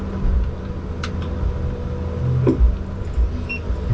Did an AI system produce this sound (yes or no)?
no